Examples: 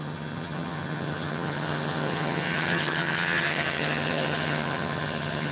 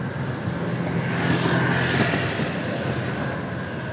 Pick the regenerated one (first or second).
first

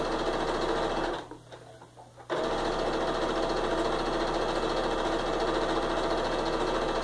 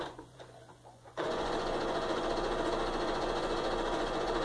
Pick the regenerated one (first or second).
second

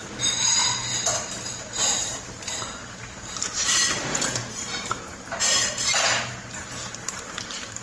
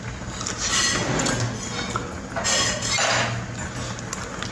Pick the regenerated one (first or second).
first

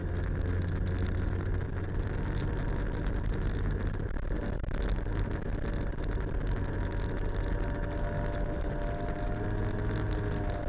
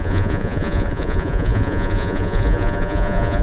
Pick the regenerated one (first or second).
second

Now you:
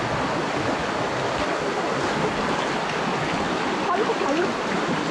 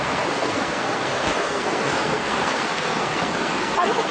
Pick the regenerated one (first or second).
second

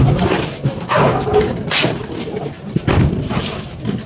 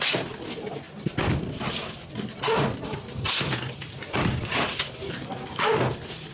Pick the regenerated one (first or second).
first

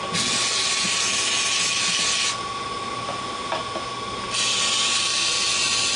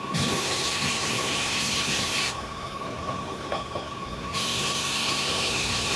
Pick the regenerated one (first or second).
second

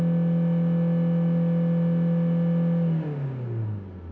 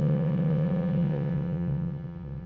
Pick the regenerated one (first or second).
second